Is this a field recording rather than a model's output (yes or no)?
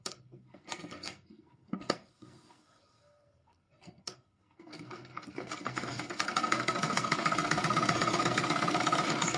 no